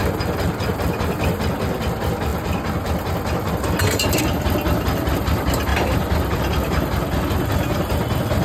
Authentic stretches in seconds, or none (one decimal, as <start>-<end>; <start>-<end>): 0.0-8.4